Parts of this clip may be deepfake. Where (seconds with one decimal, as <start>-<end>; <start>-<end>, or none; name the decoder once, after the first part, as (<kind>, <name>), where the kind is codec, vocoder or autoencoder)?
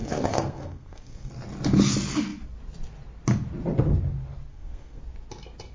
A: 0.0-1.3 (codec, SNAC); 4.5-5.0